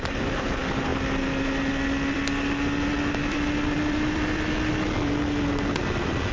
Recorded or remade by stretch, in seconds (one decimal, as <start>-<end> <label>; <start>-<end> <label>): 0.0-0.9 recorded; 0.9-4.7 remade; 4.7-6.3 recorded